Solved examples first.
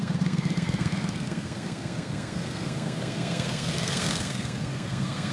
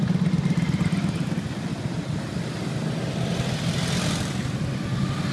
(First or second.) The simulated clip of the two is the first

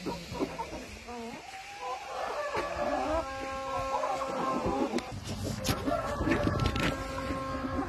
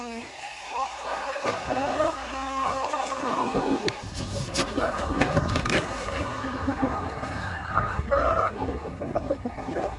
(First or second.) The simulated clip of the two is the second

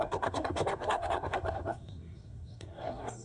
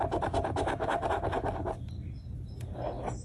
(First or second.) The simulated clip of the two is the first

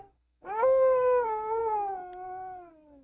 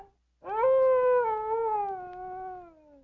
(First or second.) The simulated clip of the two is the first